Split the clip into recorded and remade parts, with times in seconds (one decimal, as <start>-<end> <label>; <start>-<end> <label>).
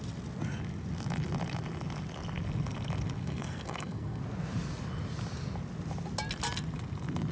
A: 0.0-3.2 recorded; 3.2-4.2 remade; 4.2-7.3 recorded